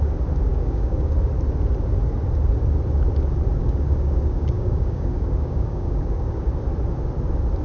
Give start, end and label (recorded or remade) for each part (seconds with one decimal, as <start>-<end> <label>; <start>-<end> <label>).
0.0-0.5 recorded; 0.5-1.1 remade; 1.1-3.6 recorded; 3.6-6.5 remade; 6.5-7.6 recorded